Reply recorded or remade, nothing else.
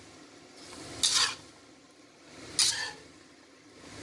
recorded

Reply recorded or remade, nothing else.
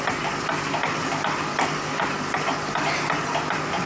recorded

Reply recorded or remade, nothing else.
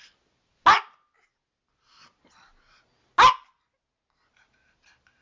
recorded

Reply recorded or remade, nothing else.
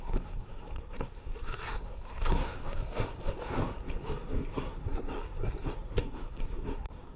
remade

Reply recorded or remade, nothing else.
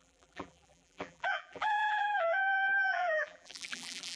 remade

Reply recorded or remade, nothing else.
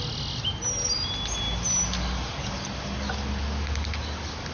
recorded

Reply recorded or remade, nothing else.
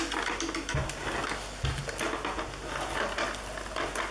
recorded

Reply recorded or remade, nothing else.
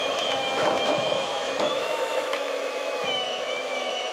remade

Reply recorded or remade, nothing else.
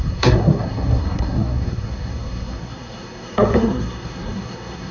remade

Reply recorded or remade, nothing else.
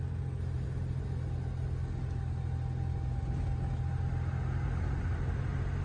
recorded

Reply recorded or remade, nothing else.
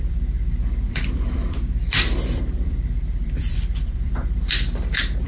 remade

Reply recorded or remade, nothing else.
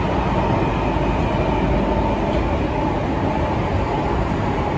recorded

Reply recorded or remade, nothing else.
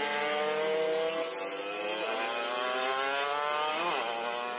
recorded